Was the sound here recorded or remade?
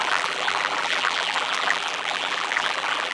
remade